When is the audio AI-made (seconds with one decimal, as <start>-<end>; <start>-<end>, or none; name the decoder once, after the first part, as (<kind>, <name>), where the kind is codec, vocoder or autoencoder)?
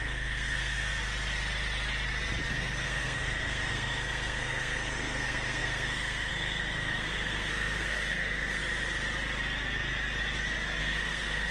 0.0-0.9 (codec, SNAC); 2.5-8.6; 10.8-11.5